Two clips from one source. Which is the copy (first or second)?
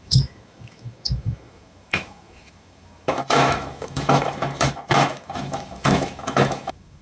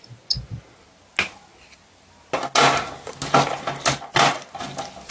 first